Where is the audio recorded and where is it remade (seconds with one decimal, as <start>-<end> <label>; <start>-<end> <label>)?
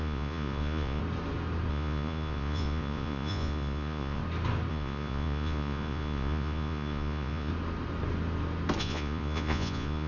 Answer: 0.0-1.0 remade; 1.0-1.7 recorded; 1.7-4.2 remade; 4.2-4.7 recorded; 4.7-7.5 remade; 7.5-8.8 recorded; 8.8-10.1 remade